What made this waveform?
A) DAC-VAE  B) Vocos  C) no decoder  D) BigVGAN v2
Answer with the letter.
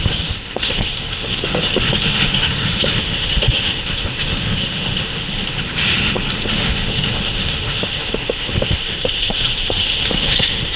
A